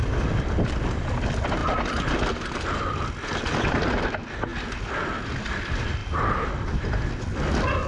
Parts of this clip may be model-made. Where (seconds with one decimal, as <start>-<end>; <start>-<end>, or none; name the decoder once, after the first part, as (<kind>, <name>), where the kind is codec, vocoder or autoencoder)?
4.5-5.0 (vocoder, BigVGAN v2); 6.0-7.2

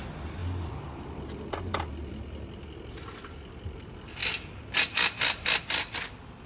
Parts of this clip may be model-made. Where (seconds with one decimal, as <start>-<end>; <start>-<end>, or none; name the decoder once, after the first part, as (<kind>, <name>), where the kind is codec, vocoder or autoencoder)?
none

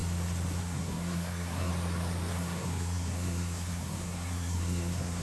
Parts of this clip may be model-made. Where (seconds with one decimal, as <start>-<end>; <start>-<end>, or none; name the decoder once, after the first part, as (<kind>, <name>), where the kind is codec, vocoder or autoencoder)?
0.6-1.7 (codec, SNAC); 2.3-5.2

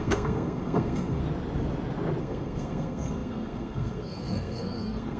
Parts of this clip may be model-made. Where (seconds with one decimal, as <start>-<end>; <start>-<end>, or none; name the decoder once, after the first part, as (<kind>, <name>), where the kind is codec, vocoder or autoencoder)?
0.0-1.2 (codec, SNAC); 2.2-5.2

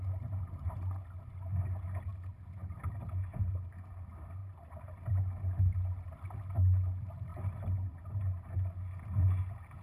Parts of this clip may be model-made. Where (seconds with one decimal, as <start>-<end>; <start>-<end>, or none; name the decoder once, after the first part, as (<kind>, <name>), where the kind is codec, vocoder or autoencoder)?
4.4-5.0 (vocoder, BigVGAN v2)

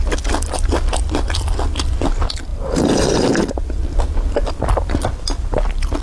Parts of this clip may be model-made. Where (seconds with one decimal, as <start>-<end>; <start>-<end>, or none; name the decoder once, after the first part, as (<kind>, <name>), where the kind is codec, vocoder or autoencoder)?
none

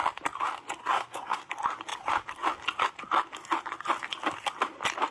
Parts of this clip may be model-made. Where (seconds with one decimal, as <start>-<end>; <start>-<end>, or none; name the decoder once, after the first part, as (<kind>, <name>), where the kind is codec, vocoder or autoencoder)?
0.8-1.5 (codec, SNAC)